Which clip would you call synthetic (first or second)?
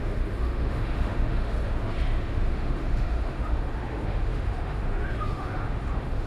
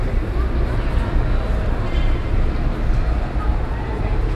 first